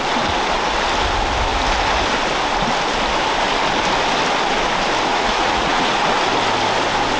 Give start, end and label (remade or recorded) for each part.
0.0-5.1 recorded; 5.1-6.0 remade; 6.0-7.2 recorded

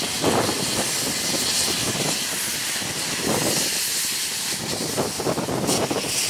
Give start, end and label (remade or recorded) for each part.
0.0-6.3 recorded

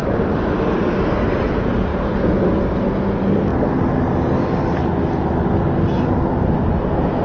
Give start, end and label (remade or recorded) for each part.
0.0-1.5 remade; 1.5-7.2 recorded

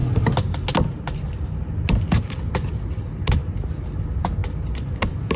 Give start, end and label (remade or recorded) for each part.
0.0-5.4 recorded

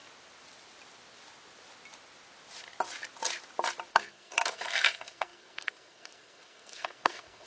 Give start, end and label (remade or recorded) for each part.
0.0-3.9 recorded; 3.9-7.5 remade

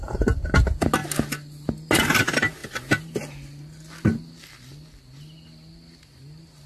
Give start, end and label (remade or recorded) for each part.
0.0-6.7 recorded